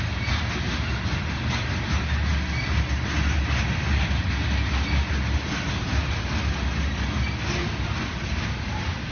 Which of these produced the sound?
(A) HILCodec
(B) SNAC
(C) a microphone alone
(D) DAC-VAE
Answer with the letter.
C